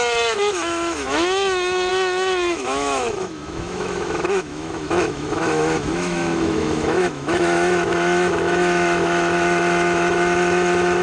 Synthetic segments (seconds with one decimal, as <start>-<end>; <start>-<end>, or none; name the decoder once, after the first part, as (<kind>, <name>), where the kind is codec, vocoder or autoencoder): 0.0-11.0 (autoencoder, DAC-VAE)